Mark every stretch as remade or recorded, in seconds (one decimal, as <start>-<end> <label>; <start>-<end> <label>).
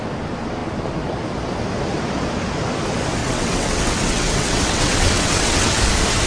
0.0-3.2 recorded; 3.2-5.8 remade; 5.8-6.3 recorded